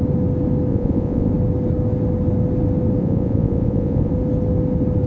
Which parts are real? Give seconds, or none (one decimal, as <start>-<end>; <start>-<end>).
0.0-0.7; 1.3-3.0; 4.1-5.1